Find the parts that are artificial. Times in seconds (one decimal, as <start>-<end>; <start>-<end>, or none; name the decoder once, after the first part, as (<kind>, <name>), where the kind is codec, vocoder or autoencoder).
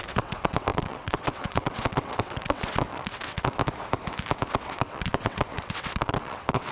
0.0-3.6 (vocoder, WaveNeXt); 4.5-6.7